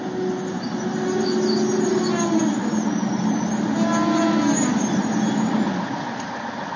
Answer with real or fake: real